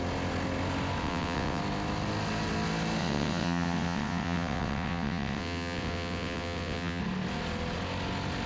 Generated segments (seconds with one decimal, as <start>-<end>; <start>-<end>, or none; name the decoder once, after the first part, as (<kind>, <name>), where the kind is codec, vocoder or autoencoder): 1.0-1.6 (vocoder, WaveNeXt); 3.0-7.0